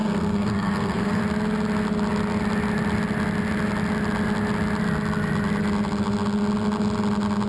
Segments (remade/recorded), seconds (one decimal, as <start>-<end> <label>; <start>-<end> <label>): 0.0-1.2 remade; 1.2-7.5 recorded